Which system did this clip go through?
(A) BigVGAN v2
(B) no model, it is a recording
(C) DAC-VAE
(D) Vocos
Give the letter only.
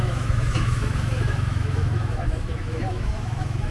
C